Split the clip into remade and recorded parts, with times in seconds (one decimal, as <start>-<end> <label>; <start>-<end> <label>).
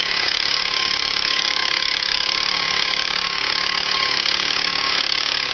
0.0-5.5 remade